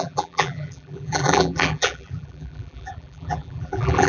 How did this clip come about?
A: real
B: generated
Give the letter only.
B